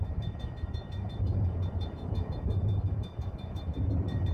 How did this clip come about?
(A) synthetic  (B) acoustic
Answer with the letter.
A